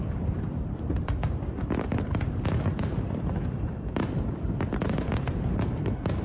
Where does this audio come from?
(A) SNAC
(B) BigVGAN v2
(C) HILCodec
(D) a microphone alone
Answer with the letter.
B